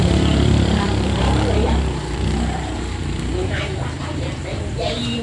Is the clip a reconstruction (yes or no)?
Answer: yes